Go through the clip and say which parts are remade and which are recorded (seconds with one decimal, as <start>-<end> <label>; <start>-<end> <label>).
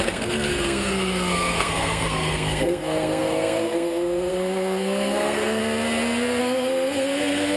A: 0.0-5.6 remade; 5.6-6.4 recorded; 6.4-7.6 remade